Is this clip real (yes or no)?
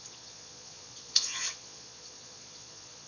no